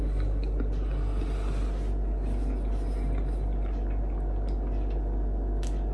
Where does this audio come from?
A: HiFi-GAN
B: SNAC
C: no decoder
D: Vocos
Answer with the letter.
C